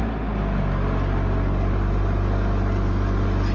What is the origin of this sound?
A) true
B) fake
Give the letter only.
A